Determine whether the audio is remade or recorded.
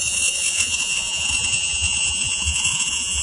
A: remade